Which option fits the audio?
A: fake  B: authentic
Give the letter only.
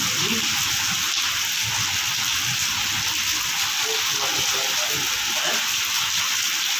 B